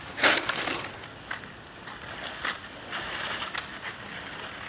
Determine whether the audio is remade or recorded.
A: recorded